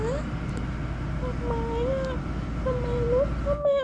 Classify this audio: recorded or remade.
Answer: recorded